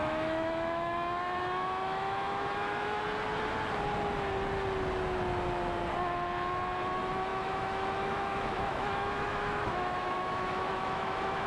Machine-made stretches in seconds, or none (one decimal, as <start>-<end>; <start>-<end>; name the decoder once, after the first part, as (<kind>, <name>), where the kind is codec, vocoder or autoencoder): 0.0-3.0 (autoencoder, DAC-VAE); 7.3-11.5